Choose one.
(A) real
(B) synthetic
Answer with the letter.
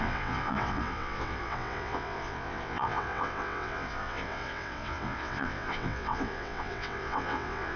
B